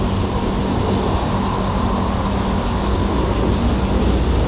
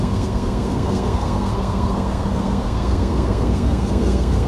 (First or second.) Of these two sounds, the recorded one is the first